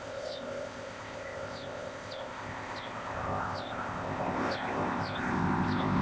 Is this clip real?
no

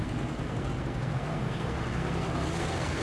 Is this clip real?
no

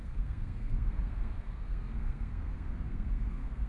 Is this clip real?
no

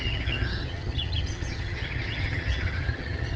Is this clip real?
no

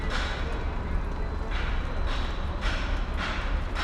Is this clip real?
yes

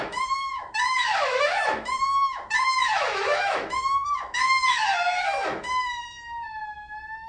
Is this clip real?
no